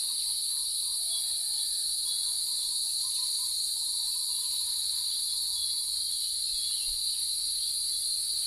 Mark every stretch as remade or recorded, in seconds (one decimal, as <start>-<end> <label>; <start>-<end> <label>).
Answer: 0.0-0.4 recorded; 0.4-5.5 remade; 5.5-8.5 recorded